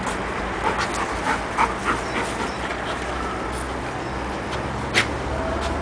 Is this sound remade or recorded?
recorded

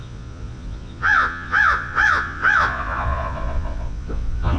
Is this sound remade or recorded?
remade